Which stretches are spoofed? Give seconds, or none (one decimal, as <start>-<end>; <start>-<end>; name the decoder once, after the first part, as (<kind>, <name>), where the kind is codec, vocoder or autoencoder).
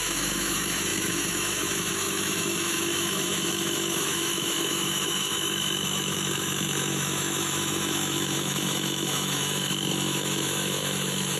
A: 0.0-11.4 (autoencoder, DAC-VAE)